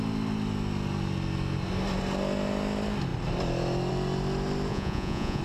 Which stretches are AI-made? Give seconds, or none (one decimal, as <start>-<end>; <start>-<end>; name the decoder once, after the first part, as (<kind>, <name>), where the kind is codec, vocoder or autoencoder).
4.7-5.4 (vocoder, Vocos)